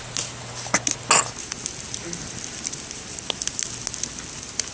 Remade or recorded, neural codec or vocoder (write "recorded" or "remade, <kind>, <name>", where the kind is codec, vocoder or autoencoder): recorded